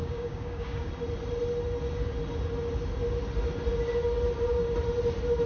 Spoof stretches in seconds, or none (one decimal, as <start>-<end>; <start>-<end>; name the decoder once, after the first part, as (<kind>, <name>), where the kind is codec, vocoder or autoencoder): 0.0-0.9 (codec, DAC)